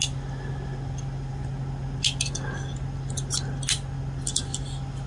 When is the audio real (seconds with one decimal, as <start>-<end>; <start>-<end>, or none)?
0.0-5.1